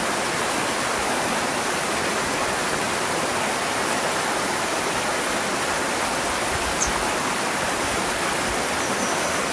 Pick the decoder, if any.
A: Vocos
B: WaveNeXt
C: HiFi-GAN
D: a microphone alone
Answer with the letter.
D